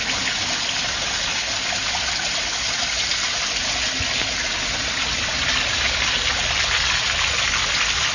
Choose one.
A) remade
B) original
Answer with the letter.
B